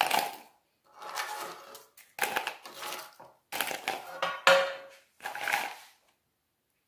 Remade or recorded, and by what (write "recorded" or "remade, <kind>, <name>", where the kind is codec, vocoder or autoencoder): recorded